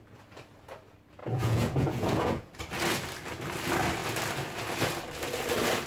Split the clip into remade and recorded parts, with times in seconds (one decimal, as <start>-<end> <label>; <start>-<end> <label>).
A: 0.0-1.2 recorded; 1.2-2.5 remade; 2.5-5.9 recorded